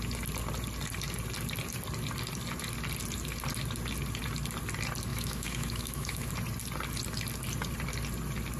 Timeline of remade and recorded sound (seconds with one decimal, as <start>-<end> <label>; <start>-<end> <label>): 0.0-5.1 recorded; 5.1-6.3 remade; 6.3-8.6 recorded